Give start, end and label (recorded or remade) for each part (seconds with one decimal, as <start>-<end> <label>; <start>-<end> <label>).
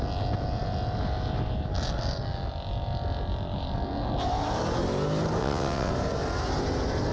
0.0-5.4 recorded; 5.4-5.9 remade; 5.9-7.1 recorded